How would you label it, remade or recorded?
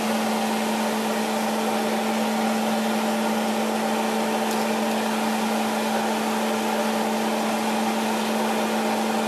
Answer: recorded